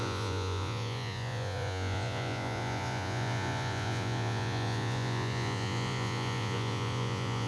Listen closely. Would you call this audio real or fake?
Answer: fake